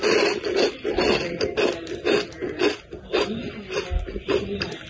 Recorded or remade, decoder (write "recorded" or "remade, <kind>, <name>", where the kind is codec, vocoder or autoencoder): recorded